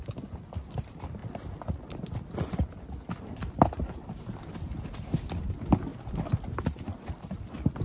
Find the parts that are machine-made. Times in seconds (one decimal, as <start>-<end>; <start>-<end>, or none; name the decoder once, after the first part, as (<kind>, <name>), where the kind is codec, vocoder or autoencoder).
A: none